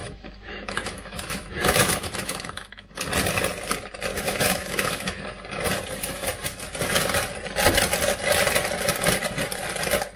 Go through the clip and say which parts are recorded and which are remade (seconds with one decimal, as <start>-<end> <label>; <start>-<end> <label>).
0.0-2.9 remade; 2.9-4.1 recorded; 4.1-5.2 remade; 5.2-10.2 recorded